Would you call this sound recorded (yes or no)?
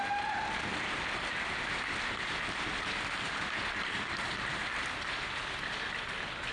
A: yes